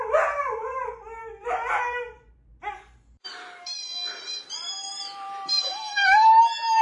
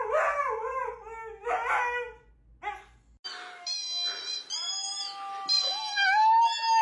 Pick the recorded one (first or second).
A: second